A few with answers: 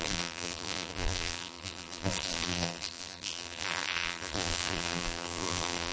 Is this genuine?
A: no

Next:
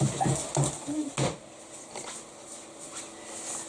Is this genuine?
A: yes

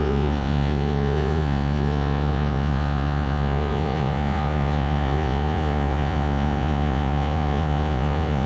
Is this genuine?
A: no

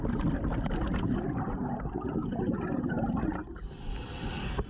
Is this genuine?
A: yes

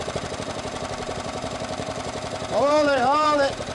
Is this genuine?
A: no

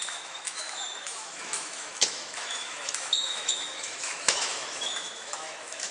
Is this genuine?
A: no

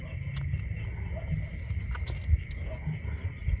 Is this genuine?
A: yes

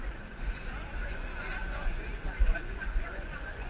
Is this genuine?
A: no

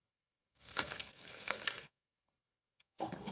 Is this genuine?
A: no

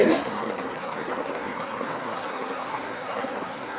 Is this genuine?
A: no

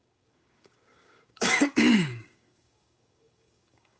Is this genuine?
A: no